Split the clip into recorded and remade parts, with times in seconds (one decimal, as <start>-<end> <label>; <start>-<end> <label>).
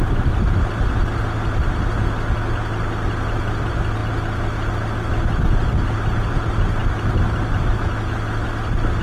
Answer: 0.0-9.0 recorded